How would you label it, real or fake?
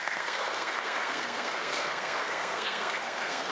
fake